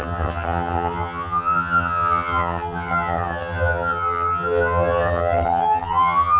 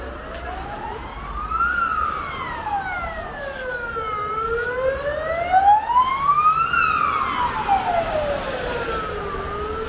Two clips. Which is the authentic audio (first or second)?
second